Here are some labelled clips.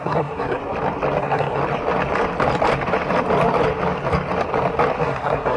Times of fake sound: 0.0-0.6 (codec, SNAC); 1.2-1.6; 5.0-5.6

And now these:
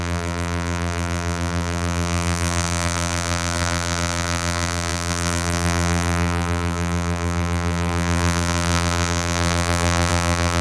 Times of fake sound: 0.0-10.6 (vocoder, BigVGAN v2)

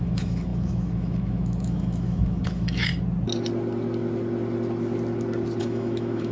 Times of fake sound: 0.0-2.9 (autoencoder, DAC-VAE); 5.6-6.3

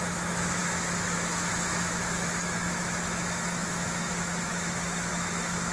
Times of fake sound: 0.0-5.7 (autoencoder, DAC-VAE)

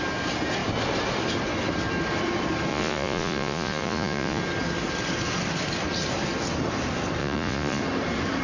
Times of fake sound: 2.7-4.4 (vocoder, Vocos); 7.2-7.8